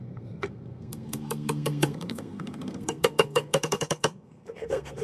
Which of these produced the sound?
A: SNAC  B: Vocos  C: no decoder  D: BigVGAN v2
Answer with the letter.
A